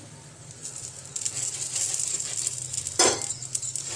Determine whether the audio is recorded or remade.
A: recorded